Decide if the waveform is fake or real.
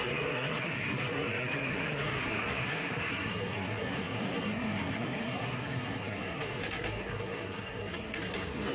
fake